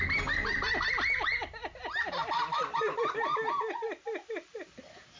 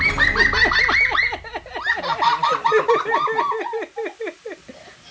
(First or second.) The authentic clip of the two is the second